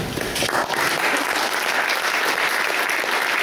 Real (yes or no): yes